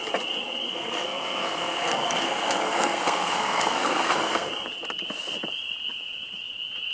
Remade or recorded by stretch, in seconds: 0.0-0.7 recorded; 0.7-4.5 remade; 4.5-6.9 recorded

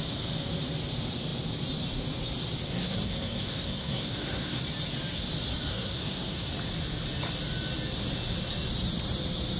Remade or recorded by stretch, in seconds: 0.0-2.7 recorded; 2.7-4.6 remade; 4.6-5.7 recorded; 5.7-6.5 remade; 6.5-9.6 recorded

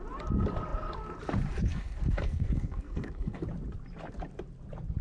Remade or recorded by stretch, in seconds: 0.0-1.7 recorded; 1.7-3.4 remade; 3.4-5.0 recorded

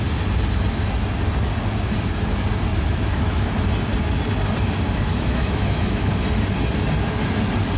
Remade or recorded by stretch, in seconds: 0.0-2.7 recorded; 2.7-3.5 remade; 3.5-5.1 recorded; 5.1-6.1 remade; 6.1-7.8 recorded

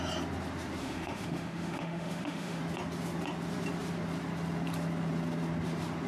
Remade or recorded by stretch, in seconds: 0.0-0.8 recorded; 0.8-2.6 remade; 2.6-6.1 recorded